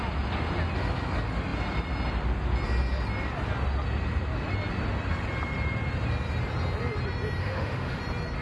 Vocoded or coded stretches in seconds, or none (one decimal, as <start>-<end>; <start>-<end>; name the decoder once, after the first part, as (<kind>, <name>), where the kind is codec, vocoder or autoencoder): 7.4-8.0 (autoencoder, DAC-VAE)